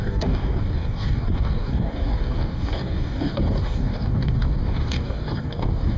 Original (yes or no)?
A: no